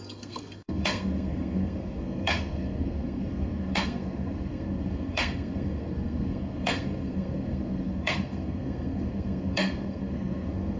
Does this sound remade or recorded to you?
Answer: remade